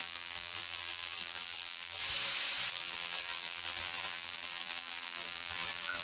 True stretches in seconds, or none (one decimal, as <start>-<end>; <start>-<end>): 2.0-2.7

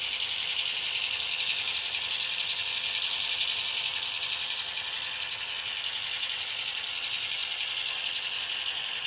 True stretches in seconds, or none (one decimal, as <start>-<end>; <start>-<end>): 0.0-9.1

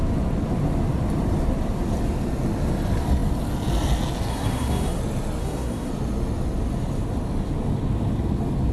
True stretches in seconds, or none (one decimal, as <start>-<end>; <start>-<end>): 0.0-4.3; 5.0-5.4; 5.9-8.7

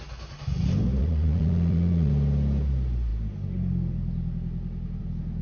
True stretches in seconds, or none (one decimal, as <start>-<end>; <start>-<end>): 0.0-1.0; 2.1-5.4

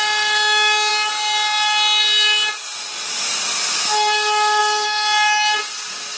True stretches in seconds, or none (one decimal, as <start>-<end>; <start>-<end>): 0.0-6.2

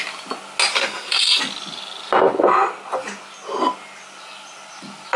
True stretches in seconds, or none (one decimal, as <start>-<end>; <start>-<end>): 0.0-0.7; 1.4-5.2